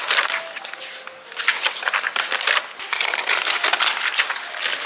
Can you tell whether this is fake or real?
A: real